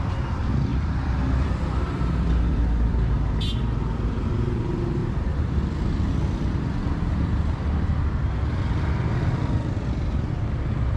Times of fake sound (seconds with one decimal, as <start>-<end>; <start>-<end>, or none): 0.7-3.6; 5.0-8.0